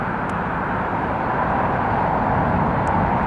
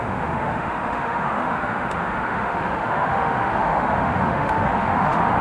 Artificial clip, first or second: second